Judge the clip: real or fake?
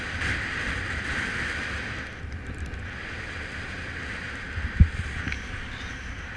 real